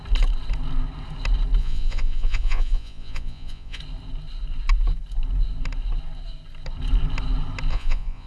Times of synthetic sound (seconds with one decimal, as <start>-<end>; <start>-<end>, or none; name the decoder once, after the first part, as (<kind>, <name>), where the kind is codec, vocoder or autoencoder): 1.6-3.8 (vocoder, Vocos); 7.7-8.3